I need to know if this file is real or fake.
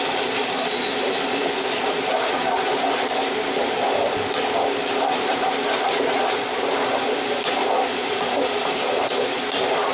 real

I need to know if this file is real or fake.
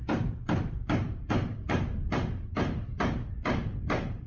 real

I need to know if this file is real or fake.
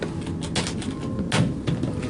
real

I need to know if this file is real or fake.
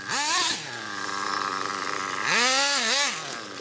real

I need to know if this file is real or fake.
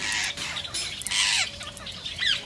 real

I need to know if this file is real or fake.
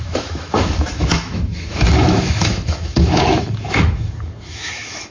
fake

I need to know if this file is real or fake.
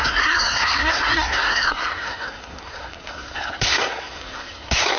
fake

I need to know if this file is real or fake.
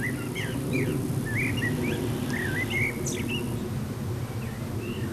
real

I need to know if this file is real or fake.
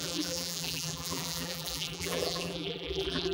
fake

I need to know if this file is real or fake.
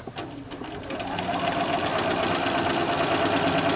real